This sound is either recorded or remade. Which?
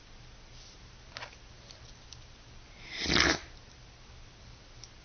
recorded